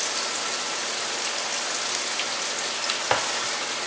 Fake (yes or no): no